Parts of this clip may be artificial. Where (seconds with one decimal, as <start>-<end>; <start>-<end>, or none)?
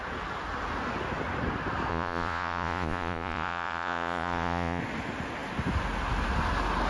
1.9-4.8